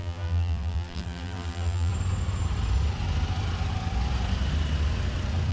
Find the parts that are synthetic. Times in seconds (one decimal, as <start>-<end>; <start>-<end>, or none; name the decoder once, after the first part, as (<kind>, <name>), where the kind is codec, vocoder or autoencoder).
0.0-1.9 (vocoder, BigVGAN v2)

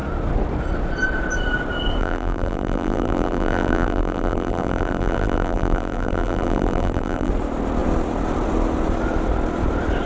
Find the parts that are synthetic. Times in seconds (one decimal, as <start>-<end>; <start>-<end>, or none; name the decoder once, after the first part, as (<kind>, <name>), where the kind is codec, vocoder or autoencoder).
2.0-7.3 (vocoder, BigVGAN v2)